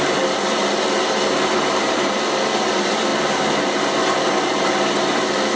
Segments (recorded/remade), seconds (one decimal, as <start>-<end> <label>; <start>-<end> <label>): 0.0-5.6 recorded

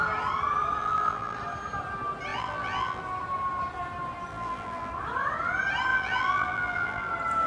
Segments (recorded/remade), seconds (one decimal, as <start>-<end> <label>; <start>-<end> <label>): 0.0-0.8 recorded; 0.8-1.4 remade; 1.4-2.3 recorded; 2.3-3.0 remade; 3.0-4.3 recorded; 4.3-4.9 remade; 4.9-5.9 recorded; 5.9-7.1 remade; 7.1-7.5 recorded

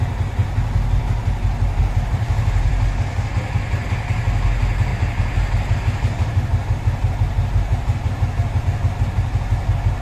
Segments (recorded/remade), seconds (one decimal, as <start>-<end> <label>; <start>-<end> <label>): 0.0-1.8 recorded; 1.8-2.7 remade; 2.7-4.9 recorded; 4.9-8.6 remade; 8.6-10.0 recorded